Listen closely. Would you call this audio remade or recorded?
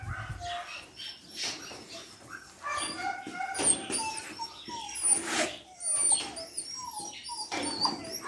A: recorded